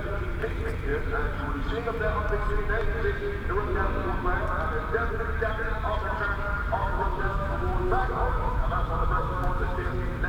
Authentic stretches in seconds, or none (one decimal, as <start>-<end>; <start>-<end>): 0.0-6.8; 9.9-10.3